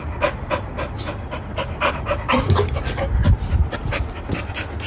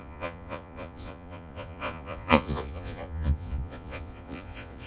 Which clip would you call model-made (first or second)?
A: second